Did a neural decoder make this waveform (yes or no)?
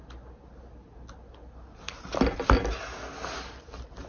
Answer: no